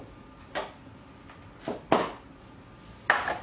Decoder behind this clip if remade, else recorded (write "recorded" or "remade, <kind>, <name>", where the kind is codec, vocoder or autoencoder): recorded